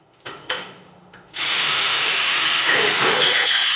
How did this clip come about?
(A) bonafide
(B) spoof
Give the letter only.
B